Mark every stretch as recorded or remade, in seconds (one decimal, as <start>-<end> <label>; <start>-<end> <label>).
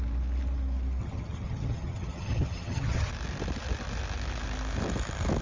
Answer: 0.0-1.0 recorded; 1.0-3.1 remade; 3.1-5.4 recorded